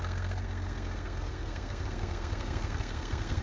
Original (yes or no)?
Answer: no